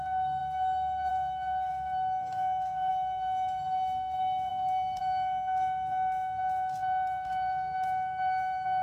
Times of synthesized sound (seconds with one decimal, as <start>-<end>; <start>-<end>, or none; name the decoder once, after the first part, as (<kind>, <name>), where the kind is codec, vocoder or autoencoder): 0.0-8.8 (codec, SNAC)